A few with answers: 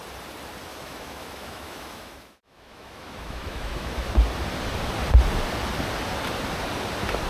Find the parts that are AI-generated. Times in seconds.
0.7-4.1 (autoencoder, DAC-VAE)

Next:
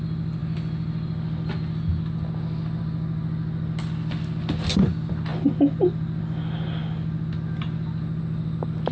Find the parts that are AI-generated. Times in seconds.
none